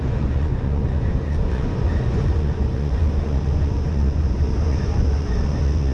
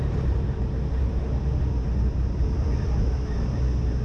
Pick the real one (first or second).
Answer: second